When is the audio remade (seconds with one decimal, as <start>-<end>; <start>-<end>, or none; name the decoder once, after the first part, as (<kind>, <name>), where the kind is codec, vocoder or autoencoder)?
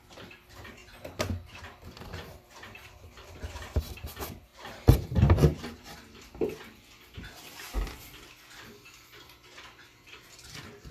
0.0-0.8 (vocoder, BigVGAN v2); 1.6-4.5; 5.7-10.9